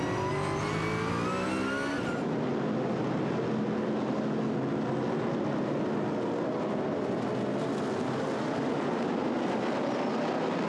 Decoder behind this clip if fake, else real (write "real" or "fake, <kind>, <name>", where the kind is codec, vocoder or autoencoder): real